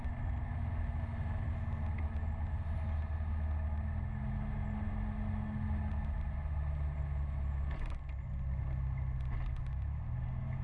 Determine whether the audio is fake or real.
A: real